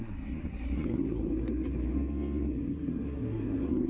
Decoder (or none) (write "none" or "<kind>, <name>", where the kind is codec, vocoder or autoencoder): codec, SNAC